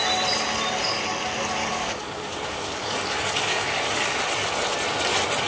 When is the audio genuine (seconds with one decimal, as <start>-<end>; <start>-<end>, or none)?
0.0-1.6; 4.2-5.5